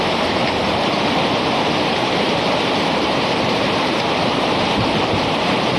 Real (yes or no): no